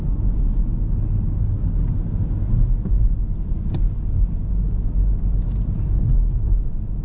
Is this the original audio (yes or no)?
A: yes